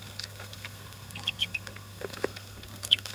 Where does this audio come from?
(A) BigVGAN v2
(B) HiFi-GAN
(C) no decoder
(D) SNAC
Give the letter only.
D